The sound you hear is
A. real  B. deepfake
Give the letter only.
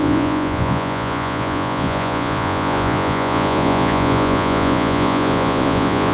B